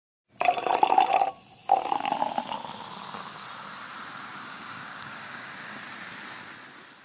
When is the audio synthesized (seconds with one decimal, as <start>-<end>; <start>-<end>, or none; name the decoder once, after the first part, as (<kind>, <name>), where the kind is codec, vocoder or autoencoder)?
4.3-5.8 (codec, DAC)